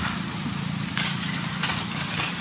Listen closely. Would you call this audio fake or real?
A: real